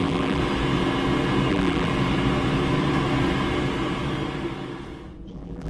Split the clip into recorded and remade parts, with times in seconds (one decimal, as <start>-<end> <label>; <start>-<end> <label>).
0.0-0.4 remade; 0.4-1.5 recorded; 1.5-1.9 remade; 1.9-5.3 recorded; 5.3-5.7 remade